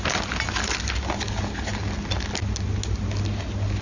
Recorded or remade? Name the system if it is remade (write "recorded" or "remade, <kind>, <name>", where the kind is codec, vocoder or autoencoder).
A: recorded